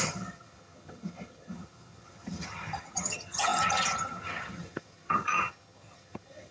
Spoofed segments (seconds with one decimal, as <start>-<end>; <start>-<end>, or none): 0.0-6.5